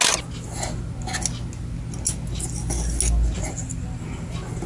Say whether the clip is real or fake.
real